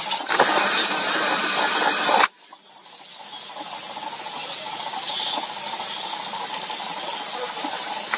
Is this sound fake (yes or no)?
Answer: no